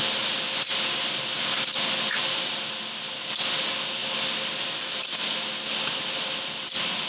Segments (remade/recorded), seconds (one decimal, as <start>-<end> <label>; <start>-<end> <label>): 0.0-7.1 recorded